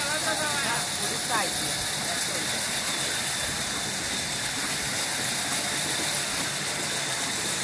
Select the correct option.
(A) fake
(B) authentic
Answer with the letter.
B